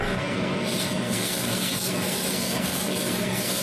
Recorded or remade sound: remade